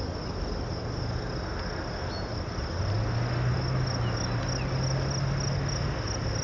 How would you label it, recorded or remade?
recorded